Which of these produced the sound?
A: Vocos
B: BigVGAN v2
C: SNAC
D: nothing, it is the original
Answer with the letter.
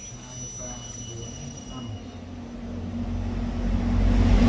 D